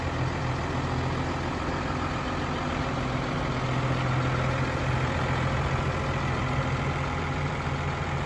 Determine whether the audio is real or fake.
real